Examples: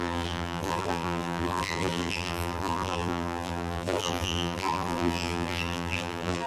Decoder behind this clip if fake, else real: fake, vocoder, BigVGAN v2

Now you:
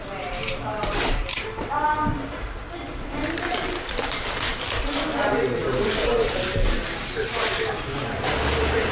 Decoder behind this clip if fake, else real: fake, vocoder, BigVGAN v2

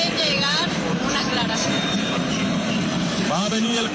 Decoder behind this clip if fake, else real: fake, vocoder, BigVGAN v2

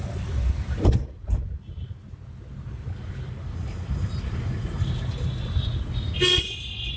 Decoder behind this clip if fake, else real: real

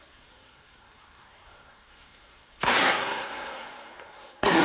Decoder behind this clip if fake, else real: fake, codec, SNAC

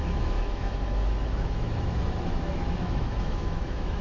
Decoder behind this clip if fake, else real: fake, autoencoder, DAC-VAE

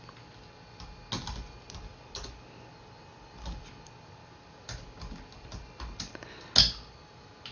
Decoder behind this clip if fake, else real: real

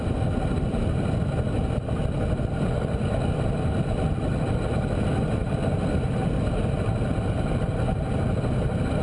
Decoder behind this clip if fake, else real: real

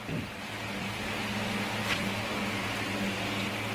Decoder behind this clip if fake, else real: real